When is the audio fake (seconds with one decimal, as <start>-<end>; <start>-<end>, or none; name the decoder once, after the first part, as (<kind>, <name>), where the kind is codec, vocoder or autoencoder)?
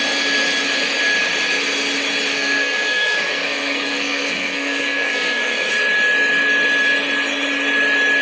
2.3-5.7 (codec, SNAC)